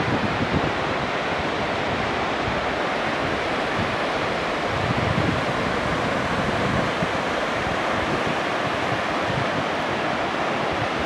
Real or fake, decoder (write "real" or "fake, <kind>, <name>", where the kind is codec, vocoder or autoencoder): real